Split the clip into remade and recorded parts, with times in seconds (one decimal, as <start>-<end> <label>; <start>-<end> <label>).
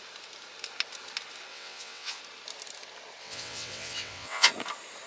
0.0-1.5 recorded; 1.5-2.2 remade; 2.2-3.2 recorded; 3.2-4.5 remade; 4.5-5.1 recorded